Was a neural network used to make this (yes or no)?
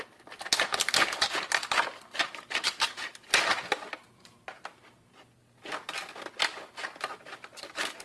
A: no